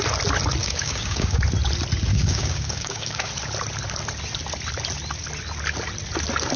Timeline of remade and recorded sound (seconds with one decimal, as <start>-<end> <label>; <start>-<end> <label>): 0.0-0.6 recorded; 0.6-1.4 remade; 1.4-2.1 recorded; 2.1-3.3 remade; 3.3-6.6 recorded

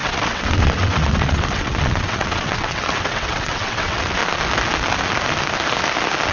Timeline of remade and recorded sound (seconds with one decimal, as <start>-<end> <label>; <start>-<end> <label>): 0.0-4.2 remade; 4.2-6.3 recorded

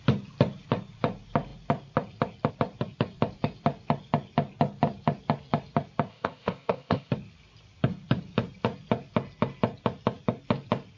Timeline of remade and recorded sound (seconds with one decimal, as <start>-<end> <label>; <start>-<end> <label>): 0.0-6.1 recorded; 6.1-7.1 remade; 7.1-11.0 recorded

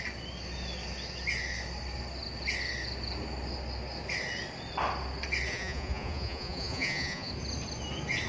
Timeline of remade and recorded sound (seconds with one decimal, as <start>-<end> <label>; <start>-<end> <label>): 0.0-5.5 recorded; 5.5-7.3 remade; 7.3-8.3 recorded

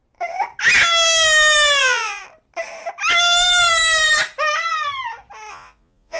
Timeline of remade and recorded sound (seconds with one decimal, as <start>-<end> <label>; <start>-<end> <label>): 0.0-1.8 recorded; 1.8-2.2 remade; 2.2-5.5 recorded; 5.5-6.2 remade

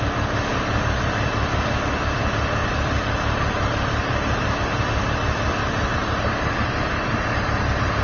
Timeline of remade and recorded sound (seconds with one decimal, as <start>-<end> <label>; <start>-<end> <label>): 0.0-0.5 recorded; 0.5-1.1 remade; 1.1-2.6 recorded; 2.6-4.6 remade; 4.6-5.6 recorded; 5.6-8.0 remade

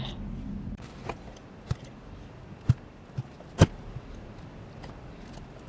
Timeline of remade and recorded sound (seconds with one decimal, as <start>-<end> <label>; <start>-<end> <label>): 0.0-5.7 recorded